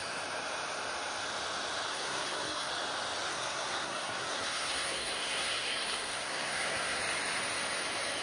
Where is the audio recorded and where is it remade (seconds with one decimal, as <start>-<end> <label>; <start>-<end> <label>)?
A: 0.0-1.9 recorded; 1.9-2.7 remade; 2.7-3.3 recorded; 3.3-7.0 remade; 7.0-8.2 recorded